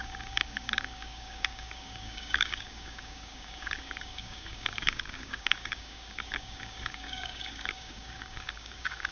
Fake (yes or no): yes